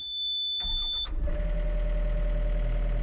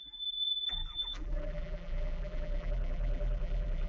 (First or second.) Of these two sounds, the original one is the first